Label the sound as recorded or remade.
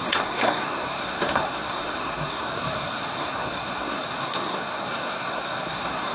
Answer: remade